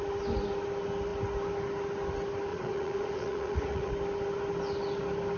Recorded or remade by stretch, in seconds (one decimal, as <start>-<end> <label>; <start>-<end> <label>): 0.0-2.5 recorded; 2.5-3.9 remade; 3.9-5.4 recorded